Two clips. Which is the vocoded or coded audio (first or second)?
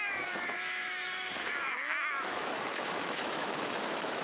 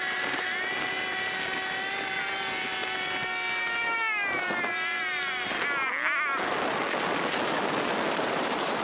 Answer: first